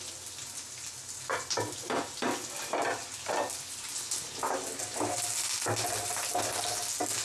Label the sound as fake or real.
real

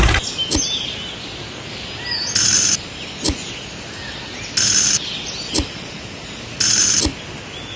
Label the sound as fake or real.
real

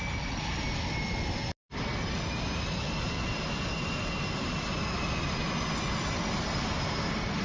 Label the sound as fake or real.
real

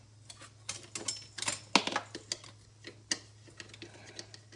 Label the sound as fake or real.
real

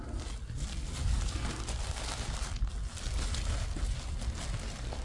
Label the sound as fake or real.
real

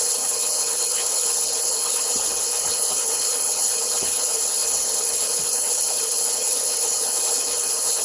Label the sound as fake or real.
fake